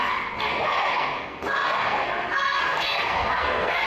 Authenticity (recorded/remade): remade